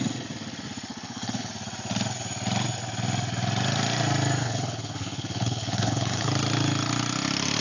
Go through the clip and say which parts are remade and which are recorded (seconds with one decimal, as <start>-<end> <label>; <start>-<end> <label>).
0.0-0.9 recorded; 0.9-1.5 remade; 1.5-4.4 recorded; 4.4-6.3 remade; 6.3-7.6 recorded

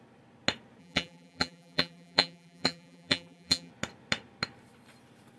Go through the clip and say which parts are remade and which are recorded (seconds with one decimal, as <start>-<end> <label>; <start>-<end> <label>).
0.0-0.8 recorded; 0.8-3.7 remade; 3.7-5.4 recorded

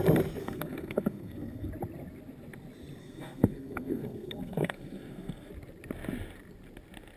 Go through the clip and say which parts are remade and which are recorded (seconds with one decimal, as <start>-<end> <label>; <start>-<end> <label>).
0.0-0.4 recorded; 0.4-1.7 remade; 1.7-3.0 recorded; 3.0-5.5 remade; 5.5-7.2 recorded

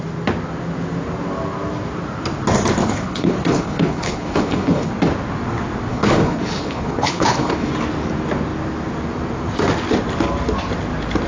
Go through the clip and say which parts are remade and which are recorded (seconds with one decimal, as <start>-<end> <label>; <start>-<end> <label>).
0.0-2.8 recorded; 2.8-4.9 remade; 4.9-5.9 recorded; 5.9-7.7 remade; 7.7-11.3 recorded

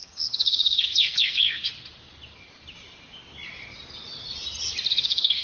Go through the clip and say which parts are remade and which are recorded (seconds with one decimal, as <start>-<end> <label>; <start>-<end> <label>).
0.0-1.7 remade; 1.7-4.9 recorded; 4.9-5.4 remade